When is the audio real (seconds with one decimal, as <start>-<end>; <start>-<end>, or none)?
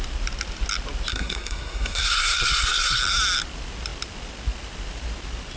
0.0-1.1; 3.0-5.6